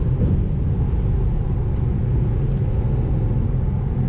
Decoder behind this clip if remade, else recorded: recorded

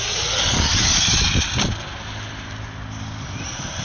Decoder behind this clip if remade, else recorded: recorded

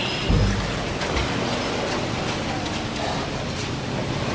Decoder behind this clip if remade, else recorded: recorded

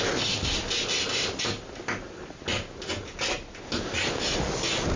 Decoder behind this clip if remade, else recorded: recorded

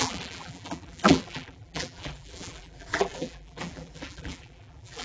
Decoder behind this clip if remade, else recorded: remade, vocoder, BigVGAN v2